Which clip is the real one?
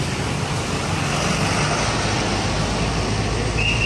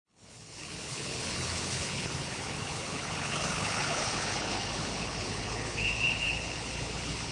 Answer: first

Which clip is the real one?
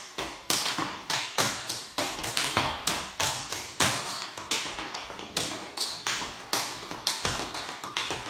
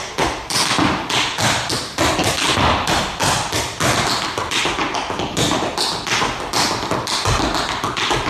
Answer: second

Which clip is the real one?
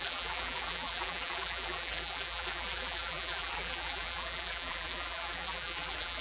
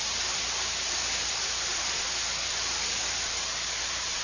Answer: second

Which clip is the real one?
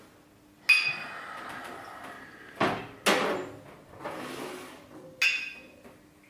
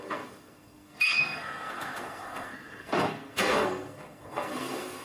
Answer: first